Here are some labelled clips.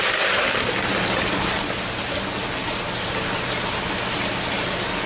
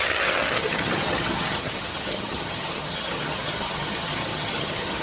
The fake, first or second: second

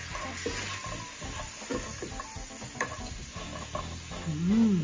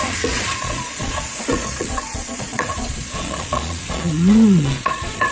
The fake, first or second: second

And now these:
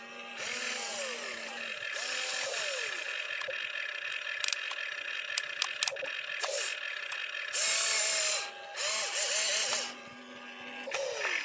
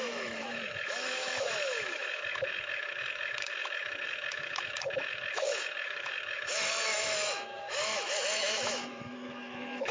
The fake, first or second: second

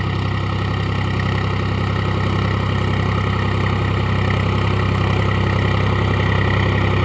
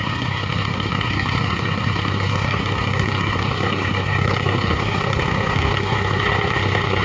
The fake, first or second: second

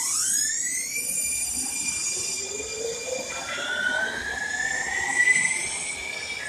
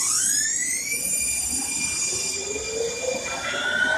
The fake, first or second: first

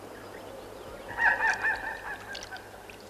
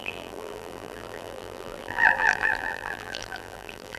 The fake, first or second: second